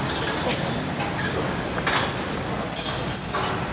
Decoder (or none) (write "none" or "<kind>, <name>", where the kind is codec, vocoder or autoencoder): none